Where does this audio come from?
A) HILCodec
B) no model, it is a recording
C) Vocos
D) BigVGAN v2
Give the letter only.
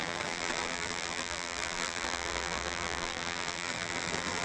D